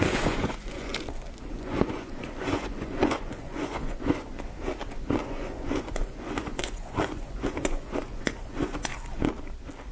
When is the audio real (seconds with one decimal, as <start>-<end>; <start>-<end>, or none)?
0.9-1.5; 4.3-5.2; 8.9-9.9